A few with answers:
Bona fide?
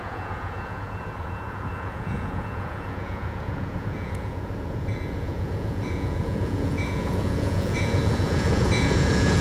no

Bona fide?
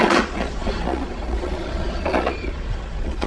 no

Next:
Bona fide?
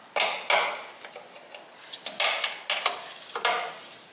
yes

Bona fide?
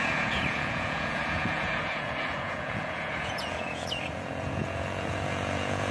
no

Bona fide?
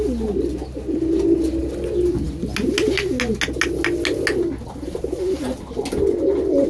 yes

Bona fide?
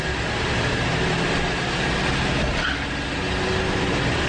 yes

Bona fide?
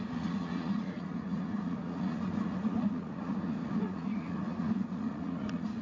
no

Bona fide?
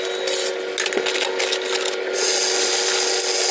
yes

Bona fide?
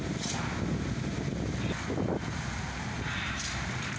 yes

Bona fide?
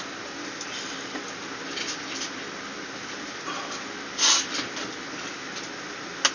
yes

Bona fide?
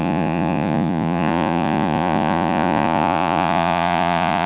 no